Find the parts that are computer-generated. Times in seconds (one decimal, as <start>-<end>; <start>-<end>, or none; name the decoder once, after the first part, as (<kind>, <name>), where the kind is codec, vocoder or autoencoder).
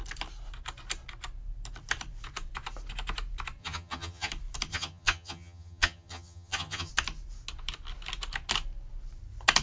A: 3.6-4.3 (vocoder, HiFi-GAN); 4.7-6.9